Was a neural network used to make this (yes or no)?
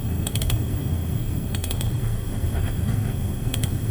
yes